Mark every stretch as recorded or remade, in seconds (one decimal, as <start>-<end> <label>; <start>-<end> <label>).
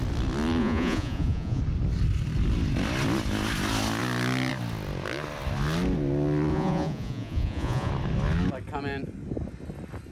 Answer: 0.0-0.6 recorded; 0.6-1.6 remade; 1.6-6.5 recorded; 6.5-7.9 remade; 7.9-10.1 recorded